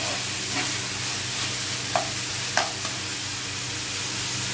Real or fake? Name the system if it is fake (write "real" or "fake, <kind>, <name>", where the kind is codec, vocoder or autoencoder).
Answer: real